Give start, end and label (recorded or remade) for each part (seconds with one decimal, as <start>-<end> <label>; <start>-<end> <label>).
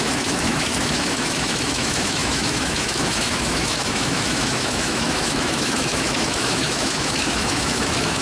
0.0-8.2 remade